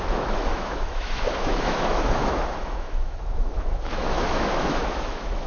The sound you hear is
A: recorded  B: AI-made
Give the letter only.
B